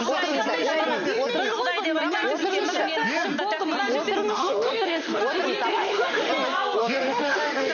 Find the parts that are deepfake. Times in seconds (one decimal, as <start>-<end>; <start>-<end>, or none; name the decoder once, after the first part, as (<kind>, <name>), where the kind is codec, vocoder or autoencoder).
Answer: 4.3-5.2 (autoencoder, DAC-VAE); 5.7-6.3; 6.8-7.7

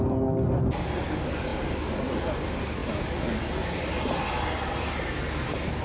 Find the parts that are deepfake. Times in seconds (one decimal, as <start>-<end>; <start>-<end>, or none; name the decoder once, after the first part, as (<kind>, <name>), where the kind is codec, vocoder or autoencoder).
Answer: none

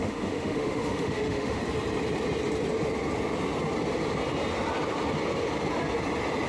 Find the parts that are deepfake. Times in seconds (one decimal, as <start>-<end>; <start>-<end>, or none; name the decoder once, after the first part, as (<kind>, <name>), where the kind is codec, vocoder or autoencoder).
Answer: 0.0-1.6 (autoencoder, DAC-VAE)

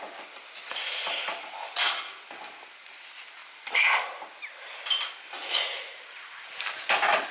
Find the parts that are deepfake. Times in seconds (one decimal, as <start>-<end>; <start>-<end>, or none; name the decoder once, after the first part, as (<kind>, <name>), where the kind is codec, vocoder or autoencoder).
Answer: none